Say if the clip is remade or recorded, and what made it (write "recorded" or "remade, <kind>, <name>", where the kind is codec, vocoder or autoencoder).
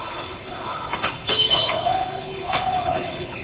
remade, codec, HILCodec